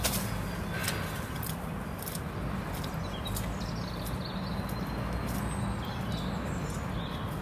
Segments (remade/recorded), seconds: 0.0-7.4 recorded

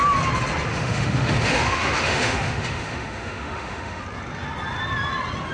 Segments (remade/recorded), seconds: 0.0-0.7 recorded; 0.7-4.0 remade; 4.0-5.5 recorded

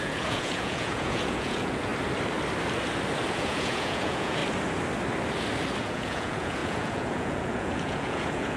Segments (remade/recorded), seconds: 0.0-1.9 remade; 1.9-3.3 recorded; 3.3-4.4 remade; 4.4-5.8 recorded; 5.8-8.6 remade

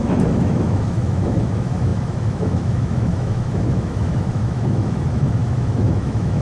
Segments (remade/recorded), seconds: 0.0-6.4 remade

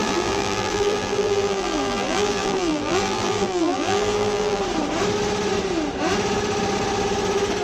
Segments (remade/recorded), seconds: 0.0-4.6 remade; 4.6-7.6 recorded